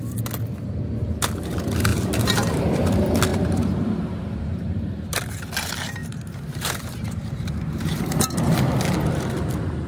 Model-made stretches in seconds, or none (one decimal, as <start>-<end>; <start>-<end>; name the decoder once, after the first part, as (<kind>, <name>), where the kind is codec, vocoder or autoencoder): 1.9-2.6 (vocoder, BigVGAN v2); 3.3-5.2; 6.0-8.8